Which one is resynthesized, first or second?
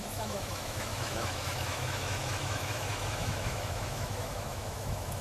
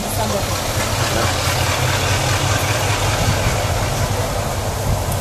first